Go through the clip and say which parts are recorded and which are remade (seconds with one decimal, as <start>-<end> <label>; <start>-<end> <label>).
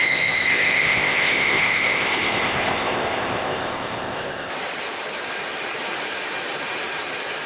0.0-4.5 remade; 4.5-7.5 recorded